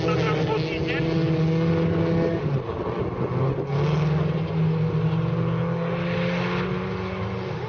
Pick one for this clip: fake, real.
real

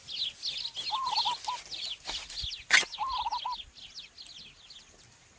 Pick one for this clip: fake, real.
real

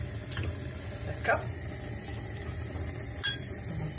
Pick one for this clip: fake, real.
real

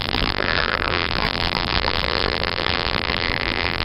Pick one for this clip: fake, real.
fake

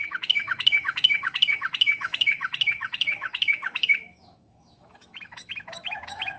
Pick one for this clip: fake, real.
fake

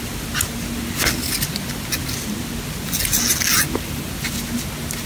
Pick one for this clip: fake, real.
real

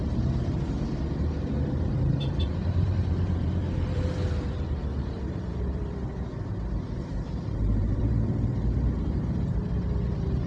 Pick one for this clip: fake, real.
fake